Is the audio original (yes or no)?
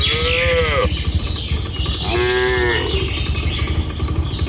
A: yes